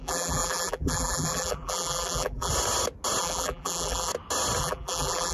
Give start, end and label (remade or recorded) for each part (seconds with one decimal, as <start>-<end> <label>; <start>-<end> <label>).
0.0-2.5 remade; 2.5-3.2 recorded; 3.2-4.1 remade; 4.1-4.6 recorded; 4.6-5.3 remade